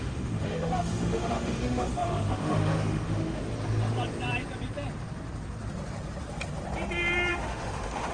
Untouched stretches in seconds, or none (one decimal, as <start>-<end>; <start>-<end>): 3.4-7.3